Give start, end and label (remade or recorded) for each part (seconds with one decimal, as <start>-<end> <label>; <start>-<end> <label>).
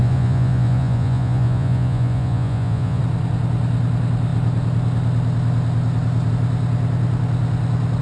0.0-3.0 remade; 3.0-8.0 recorded